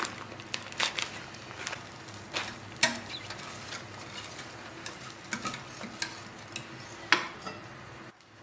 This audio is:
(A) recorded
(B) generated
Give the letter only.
A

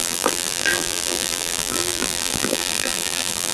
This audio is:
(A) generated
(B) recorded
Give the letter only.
A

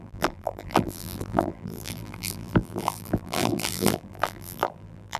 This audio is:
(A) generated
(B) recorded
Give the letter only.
A